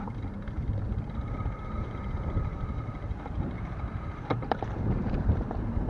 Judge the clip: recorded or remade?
remade